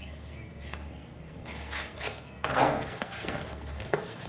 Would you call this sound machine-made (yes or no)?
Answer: yes